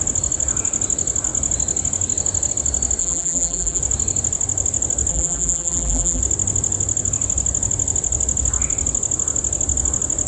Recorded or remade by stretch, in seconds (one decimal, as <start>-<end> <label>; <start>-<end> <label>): 0.0-3.0 recorded; 3.0-3.8 remade; 3.8-5.1 recorded; 5.1-6.2 remade; 6.2-10.3 recorded

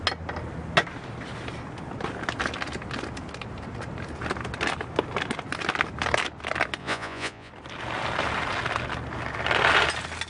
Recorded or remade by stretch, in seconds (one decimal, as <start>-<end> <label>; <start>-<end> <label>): 0.0-6.8 recorded; 6.8-7.5 remade; 7.5-10.3 recorded

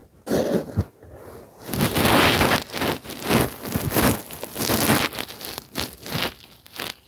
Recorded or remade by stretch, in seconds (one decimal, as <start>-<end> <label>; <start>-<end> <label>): 0.0-7.1 recorded